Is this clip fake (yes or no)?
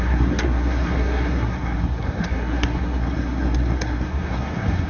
yes